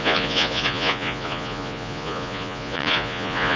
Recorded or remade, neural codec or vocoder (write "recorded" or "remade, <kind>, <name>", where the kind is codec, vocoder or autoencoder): remade, vocoder, Vocos